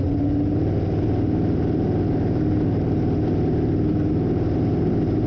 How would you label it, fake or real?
real